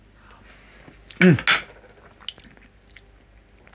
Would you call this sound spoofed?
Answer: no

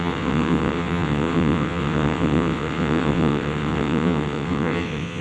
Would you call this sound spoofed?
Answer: yes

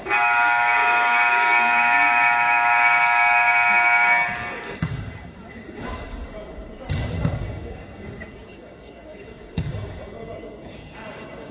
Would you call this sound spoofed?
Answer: yes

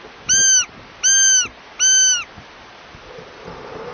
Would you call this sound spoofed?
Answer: no